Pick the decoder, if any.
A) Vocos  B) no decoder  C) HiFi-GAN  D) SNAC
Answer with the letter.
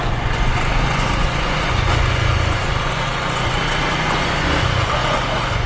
A